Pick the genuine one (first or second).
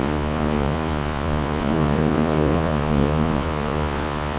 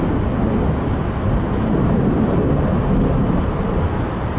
second